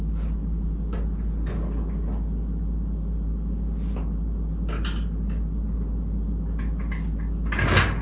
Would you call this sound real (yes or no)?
yes